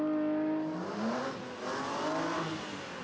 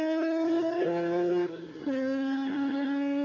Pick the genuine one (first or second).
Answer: first